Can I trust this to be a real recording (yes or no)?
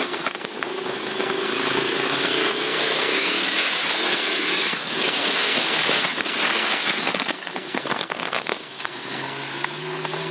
no